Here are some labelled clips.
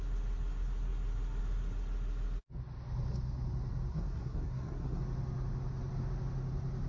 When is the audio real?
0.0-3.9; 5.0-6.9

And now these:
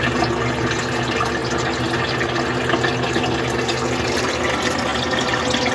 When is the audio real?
0.0-5.7

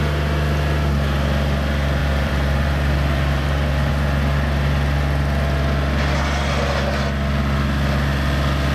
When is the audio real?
0.0-2.0; 3.9-8.7

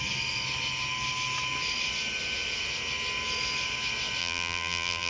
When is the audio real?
0.0-4.2

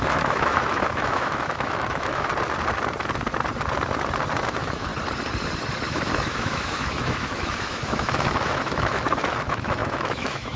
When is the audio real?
2.3-4.5; 4.9-5.9